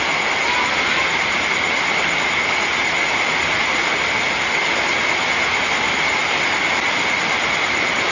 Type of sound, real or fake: real